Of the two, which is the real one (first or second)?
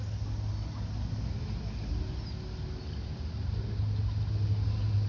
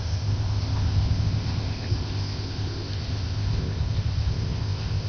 first